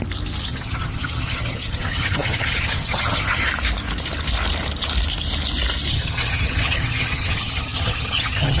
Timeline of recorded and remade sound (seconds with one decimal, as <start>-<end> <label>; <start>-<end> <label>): 0.0-0.5 recorded; 0.5-3.5 remade; 3.5-5.9 recorded; 5.9-8.6 remade